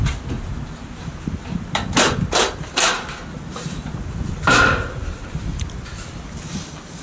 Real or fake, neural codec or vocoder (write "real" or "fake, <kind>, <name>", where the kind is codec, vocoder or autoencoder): real